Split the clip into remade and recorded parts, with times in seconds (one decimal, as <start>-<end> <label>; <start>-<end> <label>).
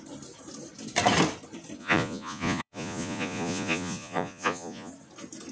0.0-1.8 recorded; 1.8-4.9 remade; 4.9-5.5 recorded